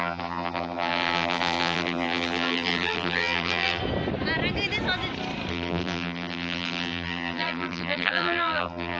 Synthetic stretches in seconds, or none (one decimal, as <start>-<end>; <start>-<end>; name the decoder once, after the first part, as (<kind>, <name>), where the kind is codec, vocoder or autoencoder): 0.0-3.8 (vocoder, BigVGAN v2); 5.5-9.0